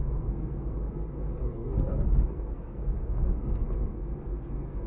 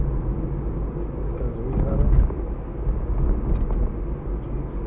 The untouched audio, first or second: second